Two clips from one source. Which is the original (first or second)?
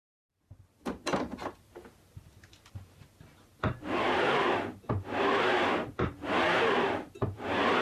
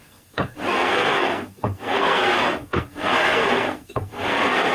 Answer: first